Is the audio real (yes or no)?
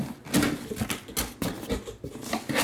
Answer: yes